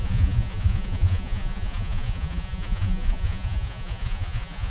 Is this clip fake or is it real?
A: fake